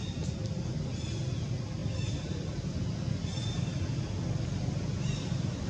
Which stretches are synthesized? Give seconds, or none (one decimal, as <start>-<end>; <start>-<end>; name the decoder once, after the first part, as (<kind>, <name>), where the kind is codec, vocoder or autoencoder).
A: none